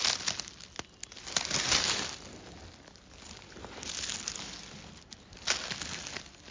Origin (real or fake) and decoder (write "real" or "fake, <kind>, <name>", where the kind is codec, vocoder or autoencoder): real